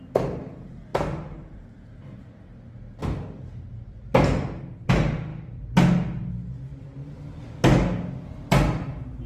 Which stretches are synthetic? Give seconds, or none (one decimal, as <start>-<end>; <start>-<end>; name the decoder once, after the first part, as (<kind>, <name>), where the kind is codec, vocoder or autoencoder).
0.9-2.4 (vocoder, BigVGAN v2); 3.0-4.6; 6.7-7.4